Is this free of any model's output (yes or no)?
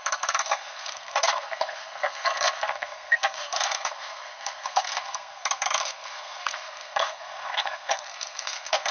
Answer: no